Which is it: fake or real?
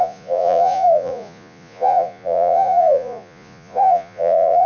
fake